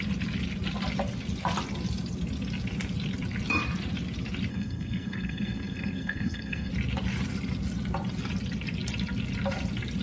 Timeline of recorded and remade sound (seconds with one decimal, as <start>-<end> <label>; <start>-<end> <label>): 0.0-4.5 recorded; 4.5-6.7 remade; 6.7-10.0 recorded